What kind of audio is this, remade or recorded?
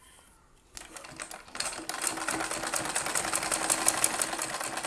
recorded